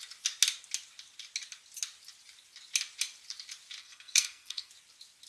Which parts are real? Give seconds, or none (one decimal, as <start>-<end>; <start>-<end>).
0.0-3.8; 4.7-5.3